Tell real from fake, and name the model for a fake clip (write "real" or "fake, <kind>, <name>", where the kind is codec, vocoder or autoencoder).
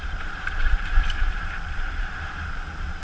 fake, vocoder, BigVGAN v2